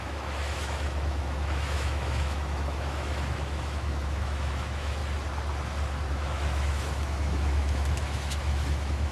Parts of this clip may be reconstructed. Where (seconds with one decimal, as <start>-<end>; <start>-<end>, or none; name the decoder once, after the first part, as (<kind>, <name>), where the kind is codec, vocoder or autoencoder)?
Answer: 0.0-5.0 (autoencoder, DAC-VAE); 6.1-9.1